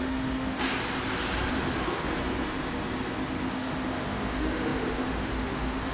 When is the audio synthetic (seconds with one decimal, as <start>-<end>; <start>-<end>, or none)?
0.0-0.6; 1.5-2.1; 3.5-5.9